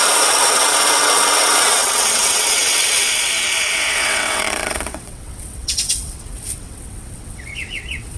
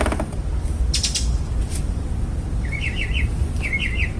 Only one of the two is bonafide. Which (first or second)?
second